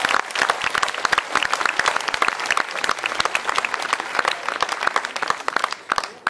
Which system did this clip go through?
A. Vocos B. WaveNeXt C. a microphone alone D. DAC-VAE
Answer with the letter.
C